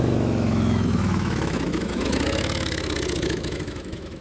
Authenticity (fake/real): fake